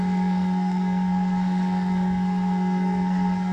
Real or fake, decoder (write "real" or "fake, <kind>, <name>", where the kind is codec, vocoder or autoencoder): fake, codec, SNAC